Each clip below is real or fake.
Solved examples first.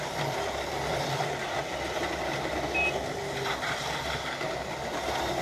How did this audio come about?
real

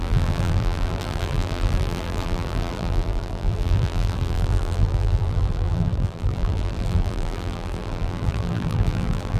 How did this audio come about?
fake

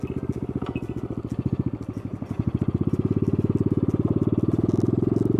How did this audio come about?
real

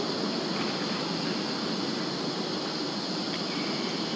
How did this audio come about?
real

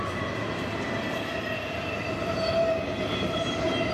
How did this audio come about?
real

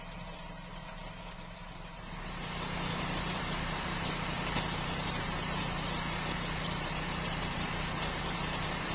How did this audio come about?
fake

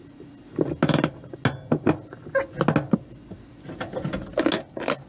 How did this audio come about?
real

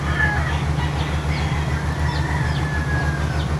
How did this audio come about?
real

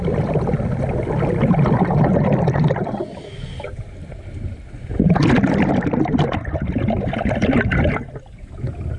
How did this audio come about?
real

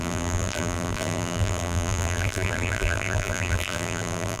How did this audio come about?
fake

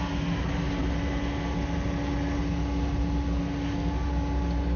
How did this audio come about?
real